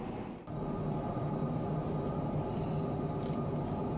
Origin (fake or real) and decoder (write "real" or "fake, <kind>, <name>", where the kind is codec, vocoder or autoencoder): real